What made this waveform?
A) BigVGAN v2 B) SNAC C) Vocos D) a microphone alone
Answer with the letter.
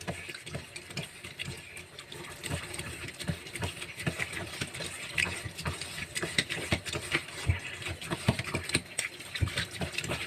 D